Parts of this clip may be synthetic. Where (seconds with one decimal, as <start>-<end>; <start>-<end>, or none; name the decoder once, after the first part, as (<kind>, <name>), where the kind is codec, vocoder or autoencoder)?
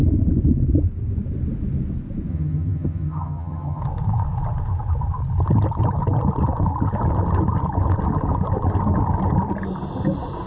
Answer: 2.3-3.8 (vocoder, HiFi-GAN)